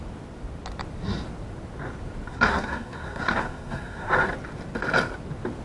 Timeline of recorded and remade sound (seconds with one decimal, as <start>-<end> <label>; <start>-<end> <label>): 0.0-2.3 recorded; 2.3-4.1 remade; 4.1-5.6 recorded